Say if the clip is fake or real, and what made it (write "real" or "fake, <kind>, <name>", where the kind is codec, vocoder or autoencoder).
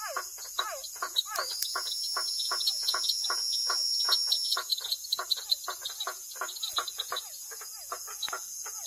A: fake, vocoder, Vocos